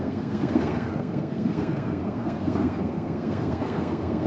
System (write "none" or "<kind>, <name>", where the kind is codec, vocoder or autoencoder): codec, SNAC